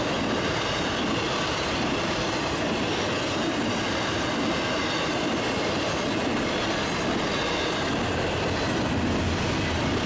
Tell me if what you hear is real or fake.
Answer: real